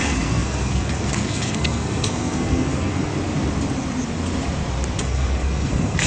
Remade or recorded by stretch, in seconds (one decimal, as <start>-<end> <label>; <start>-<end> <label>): 0.0-3.1 remade; 3.1-5.0 recorded; 5.0-6.1 remade